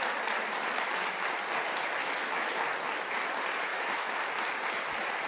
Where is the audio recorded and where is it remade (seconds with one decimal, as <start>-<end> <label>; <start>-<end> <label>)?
0.0-2.0 recorded; 2.0-2.5 remade; 2.5-3.7 recorded; 3.7-4.3 remade; 4.3-5.3 recorded